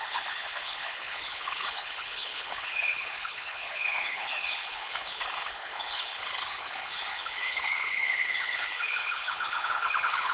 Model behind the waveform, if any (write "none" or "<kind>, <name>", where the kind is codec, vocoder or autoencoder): codec, HILCodec